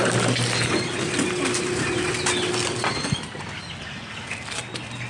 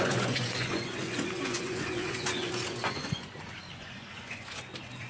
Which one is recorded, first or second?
first